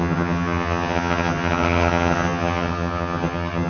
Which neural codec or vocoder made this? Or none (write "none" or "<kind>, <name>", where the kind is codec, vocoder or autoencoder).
vocoder, HiFi-GAN